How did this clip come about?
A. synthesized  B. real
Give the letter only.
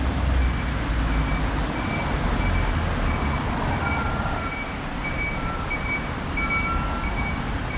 B